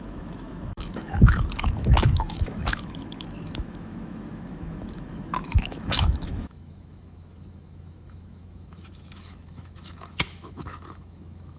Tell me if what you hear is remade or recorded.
remade